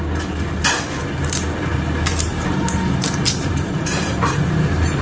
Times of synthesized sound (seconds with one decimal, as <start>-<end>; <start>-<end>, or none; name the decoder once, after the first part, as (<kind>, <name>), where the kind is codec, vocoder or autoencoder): 1.7-5.0 (vocoder, BigVGAN v2)